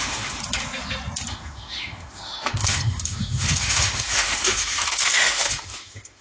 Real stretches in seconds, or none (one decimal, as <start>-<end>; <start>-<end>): 0.4-1.3